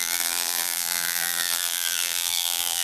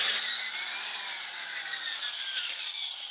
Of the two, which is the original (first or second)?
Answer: second